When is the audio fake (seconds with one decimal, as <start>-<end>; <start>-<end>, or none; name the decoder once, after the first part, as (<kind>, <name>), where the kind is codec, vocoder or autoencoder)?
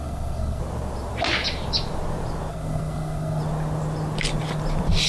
0.0-0.6 (codec, SNAC); 2.5-3.4